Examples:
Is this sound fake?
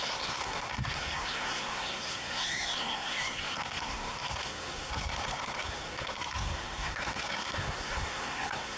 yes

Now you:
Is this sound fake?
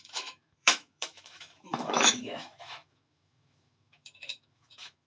yes